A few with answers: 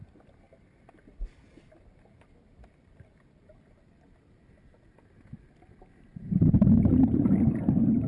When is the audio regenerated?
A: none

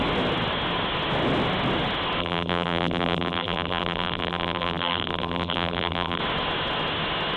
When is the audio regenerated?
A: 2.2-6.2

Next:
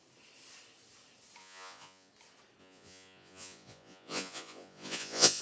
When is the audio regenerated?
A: 1.4-2.1; 2.6-5.4

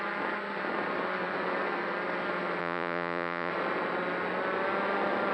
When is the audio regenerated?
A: 2.6-3.5

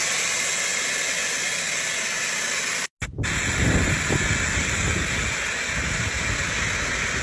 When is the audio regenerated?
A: none